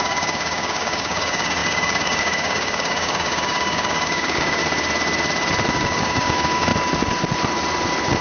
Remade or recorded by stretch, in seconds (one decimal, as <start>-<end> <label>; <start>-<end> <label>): 0.0-4.6 remade; 4.6-5.7 recorded; 5.7-6.7 remade; 6.7-8.2 recorded